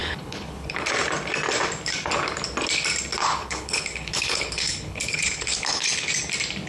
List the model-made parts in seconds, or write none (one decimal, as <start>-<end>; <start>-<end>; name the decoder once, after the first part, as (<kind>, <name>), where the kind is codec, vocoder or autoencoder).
0.0-0.8 (codec, HILCodec); 3.2-6.1